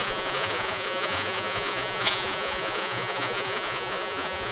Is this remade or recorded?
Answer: remade